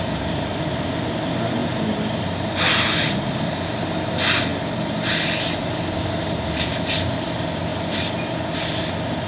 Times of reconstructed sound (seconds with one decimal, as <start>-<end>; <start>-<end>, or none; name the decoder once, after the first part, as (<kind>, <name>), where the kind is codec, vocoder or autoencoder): 1.6-2.5 (vocoder, BigVGAN v2); 7.7-8.8